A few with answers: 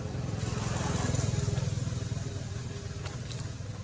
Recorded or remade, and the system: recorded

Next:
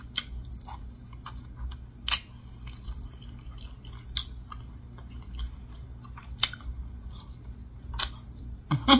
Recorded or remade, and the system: recorded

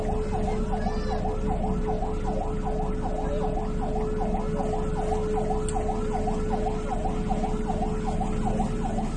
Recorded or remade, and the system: recorded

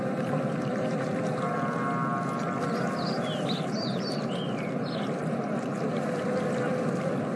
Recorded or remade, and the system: recorded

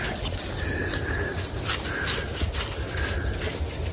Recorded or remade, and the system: recorded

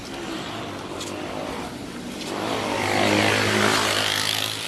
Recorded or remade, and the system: recorded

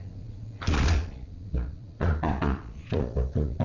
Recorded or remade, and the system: remade, vocoder, Vocos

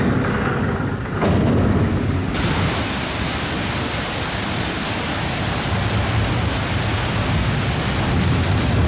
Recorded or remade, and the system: recorded